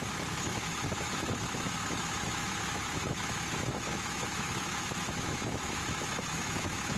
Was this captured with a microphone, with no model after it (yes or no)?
no